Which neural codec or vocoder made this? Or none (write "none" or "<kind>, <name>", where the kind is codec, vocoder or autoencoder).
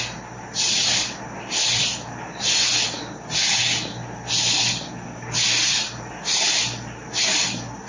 none